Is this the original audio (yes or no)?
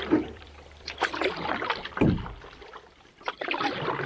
no